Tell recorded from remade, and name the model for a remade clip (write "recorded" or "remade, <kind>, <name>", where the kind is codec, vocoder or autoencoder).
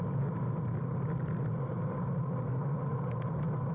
recorded